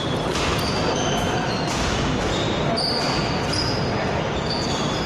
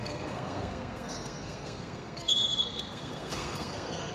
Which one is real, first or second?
first